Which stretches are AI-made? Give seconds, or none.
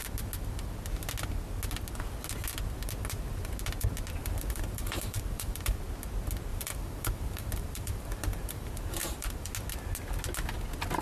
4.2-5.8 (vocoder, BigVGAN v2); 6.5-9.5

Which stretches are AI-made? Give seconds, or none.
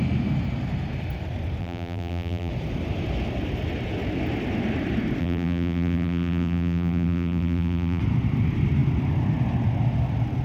1.6-2.5 (vocoder, BigVGAN v2); 5.2-8.0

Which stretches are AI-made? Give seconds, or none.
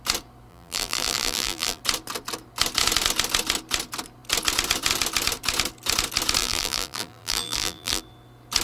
0.5-1.8 (vocoder, BigVGAN v2); 6.4-8.0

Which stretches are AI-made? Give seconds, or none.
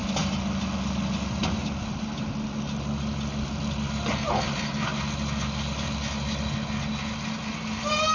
none